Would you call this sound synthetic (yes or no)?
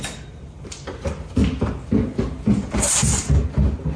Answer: no